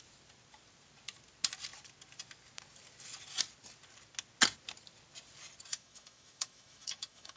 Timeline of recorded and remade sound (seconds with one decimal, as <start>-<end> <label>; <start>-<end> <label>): 0.0-5.7 recorded; 5.7-7.4 remade